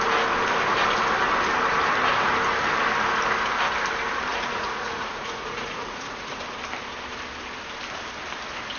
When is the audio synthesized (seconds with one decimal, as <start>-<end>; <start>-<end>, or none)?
4.3-6.4